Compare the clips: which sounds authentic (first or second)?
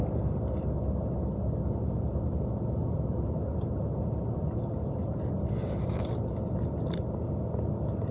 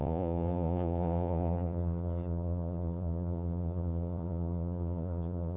first